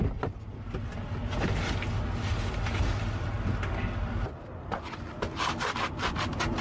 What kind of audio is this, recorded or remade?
recorded